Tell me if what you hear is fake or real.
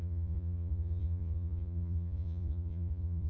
fake